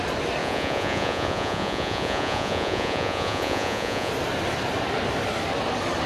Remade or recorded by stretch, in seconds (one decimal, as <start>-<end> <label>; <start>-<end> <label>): 0.0-0.4 recorded; 0.4-4.1 remade; 4.1-6.1 recorded